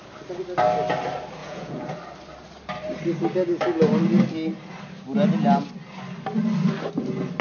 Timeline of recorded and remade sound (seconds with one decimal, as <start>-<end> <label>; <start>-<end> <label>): 0.0-1.4 recorded; 1.4-1.9 remade; 1.9-7.4 recorded

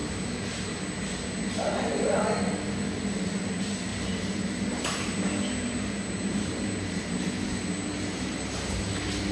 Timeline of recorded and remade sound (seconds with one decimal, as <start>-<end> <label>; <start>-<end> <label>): 0.0-1.5 remade; 1.5-3.9 recorded; 3.9-8.8 remade; 8.8-9.3 recorded

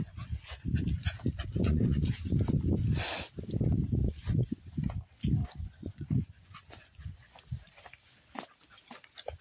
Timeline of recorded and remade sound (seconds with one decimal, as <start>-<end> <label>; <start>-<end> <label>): 0.0-1.6 recorded; 1.6-2.1 remade; 2.1-4.0 recorded; 4.0-4.8 remade; 4.8-5.4 recorded; 5.4-7.4 remade; 7.4-9.4 recorded

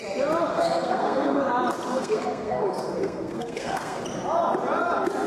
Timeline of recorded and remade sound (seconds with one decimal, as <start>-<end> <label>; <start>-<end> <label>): 0.0-0.5 recorded; 0.5-1.5 remade; 1.5-1.9 recorded; 1.9-4.0 remade; 4.0-5.3 recorded